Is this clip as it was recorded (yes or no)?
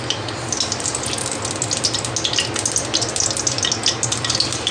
yes